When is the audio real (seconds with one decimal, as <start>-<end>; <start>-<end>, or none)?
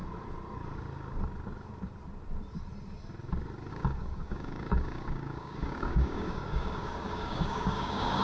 0.0-3.7